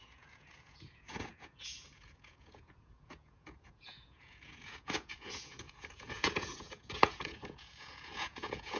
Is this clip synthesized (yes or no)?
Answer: yes